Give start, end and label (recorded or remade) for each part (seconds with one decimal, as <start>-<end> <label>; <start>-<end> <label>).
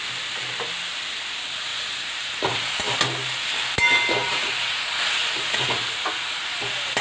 0.0-1.7 recorded; 1.7-2.8 remade; 2.8-4.2 recorded; 4.2-6.4 remade; 6.4-7.0 recorded